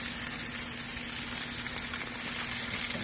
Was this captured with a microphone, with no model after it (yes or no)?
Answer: yes